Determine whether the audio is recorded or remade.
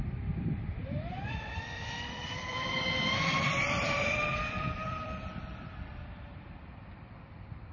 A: remade